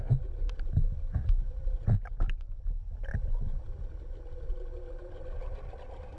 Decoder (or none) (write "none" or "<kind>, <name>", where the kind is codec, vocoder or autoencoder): none